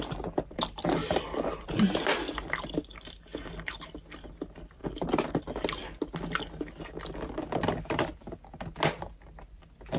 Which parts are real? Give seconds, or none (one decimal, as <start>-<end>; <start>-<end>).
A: 0.0-10.0